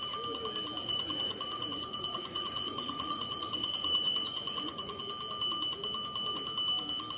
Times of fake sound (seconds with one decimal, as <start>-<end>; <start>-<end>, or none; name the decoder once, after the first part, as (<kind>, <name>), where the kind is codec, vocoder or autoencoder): 0.8-5.0 (vocoder, Vocos)